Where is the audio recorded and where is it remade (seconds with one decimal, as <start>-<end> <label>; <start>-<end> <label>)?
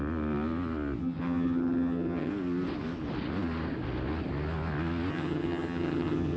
0.0-1.0 recorded; 1.0-2.3 remade; 2.3-5.1 recorded; 5.1-6.4 remade